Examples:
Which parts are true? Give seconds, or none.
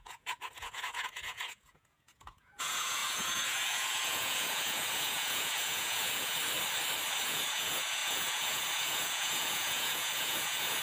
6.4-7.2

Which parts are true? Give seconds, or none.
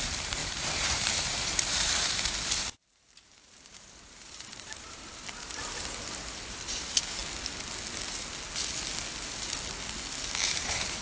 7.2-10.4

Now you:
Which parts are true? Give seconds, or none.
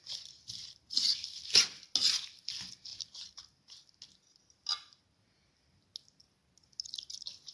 0.0-7.5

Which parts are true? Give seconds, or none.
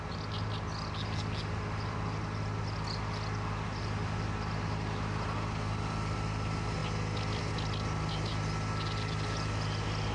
0.0-10.1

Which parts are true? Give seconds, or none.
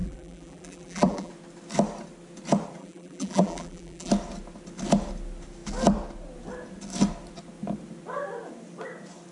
1.3-2.8; 4.1-9.3